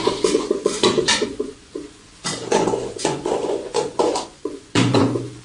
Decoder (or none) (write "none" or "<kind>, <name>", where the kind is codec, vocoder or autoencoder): vocoder, Vocos